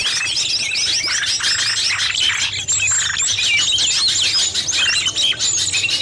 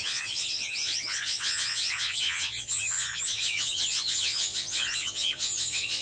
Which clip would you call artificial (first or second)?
second